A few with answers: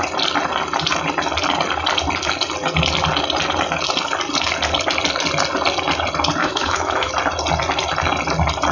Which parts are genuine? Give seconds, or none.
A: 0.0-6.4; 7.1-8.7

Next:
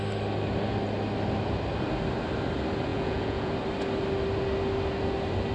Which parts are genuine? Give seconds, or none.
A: 0.0-2.9; 3.5-5.5

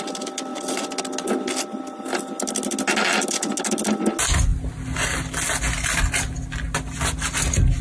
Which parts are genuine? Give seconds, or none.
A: 0.0-7.8

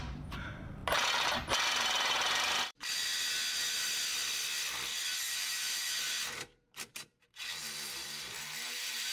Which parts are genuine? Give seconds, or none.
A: 0.8-1.7; 3.1-5.2